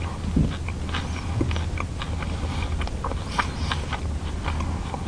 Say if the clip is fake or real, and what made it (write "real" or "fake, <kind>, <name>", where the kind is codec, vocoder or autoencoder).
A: real